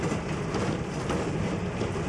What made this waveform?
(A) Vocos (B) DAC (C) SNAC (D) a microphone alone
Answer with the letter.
D